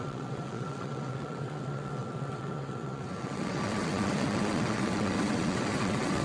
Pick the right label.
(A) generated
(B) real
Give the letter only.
A